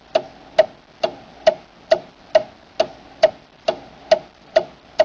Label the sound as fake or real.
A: real